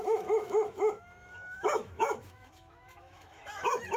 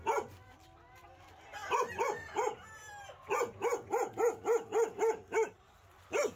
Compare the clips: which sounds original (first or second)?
second